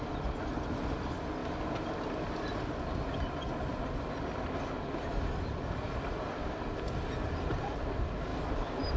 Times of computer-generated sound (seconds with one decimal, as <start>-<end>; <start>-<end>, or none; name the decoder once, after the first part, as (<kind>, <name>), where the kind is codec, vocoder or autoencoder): none